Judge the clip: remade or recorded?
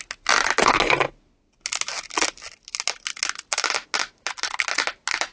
recorded